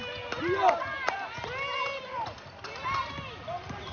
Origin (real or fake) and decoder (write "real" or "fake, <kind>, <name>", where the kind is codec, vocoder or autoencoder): real